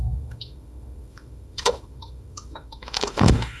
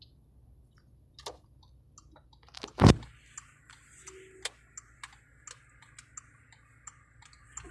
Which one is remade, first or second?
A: first